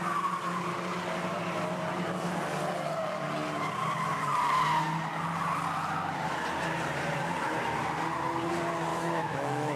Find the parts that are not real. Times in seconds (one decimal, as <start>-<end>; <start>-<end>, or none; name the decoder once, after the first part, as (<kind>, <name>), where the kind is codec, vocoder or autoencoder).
8.9-9.8 (autoencoder, DAC-VAE)